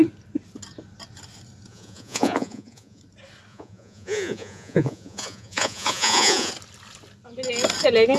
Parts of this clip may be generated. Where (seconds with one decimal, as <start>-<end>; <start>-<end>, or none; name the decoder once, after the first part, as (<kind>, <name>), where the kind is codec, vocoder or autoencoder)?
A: 1.7-3.0 (vocoder, Vocos); 3.5-6.5

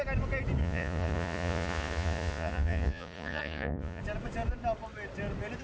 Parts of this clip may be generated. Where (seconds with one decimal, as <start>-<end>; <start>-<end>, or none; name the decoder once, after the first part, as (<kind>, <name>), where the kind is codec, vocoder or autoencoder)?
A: 0.6-4.0 (vocoder, Vocos)

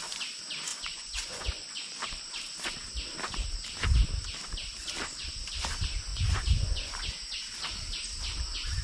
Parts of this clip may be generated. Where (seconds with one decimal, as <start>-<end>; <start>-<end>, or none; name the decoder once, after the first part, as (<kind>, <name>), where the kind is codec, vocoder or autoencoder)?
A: 0.7-2.0 (vocoder, Vocos); 6.1-6.9